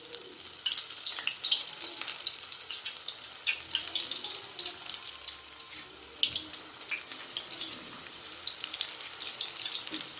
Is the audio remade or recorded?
recorded